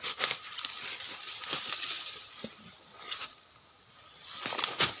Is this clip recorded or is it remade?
recorded